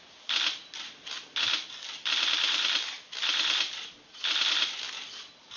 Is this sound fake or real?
real